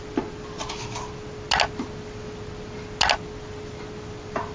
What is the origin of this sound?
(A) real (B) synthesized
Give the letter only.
A